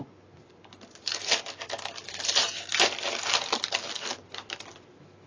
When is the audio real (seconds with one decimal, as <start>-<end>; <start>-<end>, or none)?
0.0-5.3